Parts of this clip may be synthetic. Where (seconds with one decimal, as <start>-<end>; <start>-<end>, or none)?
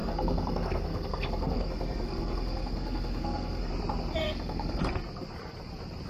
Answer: 0.0-3.7; 4.2-4.8